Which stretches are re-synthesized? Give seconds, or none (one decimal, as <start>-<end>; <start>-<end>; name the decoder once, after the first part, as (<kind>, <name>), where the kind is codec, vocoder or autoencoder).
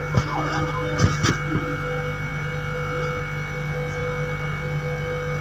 none